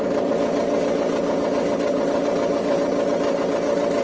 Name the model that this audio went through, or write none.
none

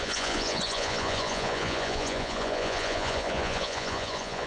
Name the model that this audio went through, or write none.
vocoder, Vocos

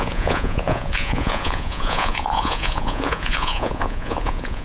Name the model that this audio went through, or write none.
vocoder, Vocos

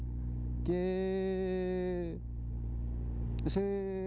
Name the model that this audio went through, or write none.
none